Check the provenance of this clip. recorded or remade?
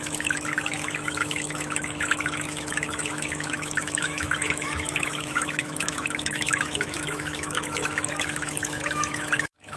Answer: remade